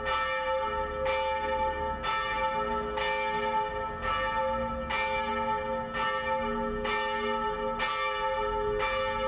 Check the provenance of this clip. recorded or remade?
recorded